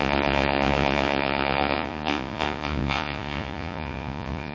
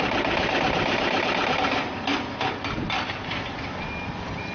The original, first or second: second